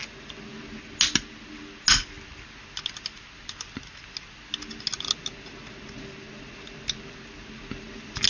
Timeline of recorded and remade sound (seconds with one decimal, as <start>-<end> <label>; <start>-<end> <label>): 0.0-8.3 recorded